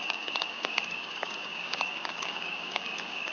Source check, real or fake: fake